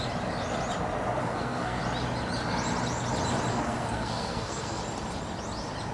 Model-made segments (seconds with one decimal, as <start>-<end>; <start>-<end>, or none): 1.2-1.8; 3.5-4.8